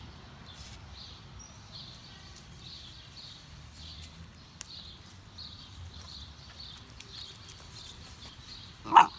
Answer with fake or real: fake